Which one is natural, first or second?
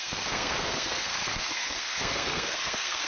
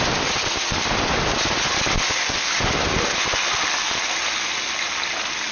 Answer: second